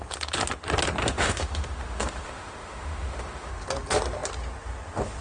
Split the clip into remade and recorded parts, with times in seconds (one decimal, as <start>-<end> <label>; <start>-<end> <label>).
0.0-1.0 recorded; 1.0-3.5 remade; 3.5-5.2 recorded